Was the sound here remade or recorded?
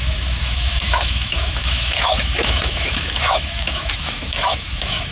remade